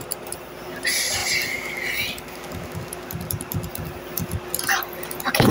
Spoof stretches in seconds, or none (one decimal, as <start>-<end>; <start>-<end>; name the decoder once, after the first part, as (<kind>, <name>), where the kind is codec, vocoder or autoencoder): 1.2-4.3 (vocoder, BigVGAN v2)